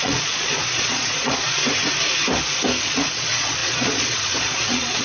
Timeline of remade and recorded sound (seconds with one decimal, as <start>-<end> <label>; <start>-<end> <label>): 0.0-1.6 remade; 1.6-2.8 recorded; 2.8-5.0 remade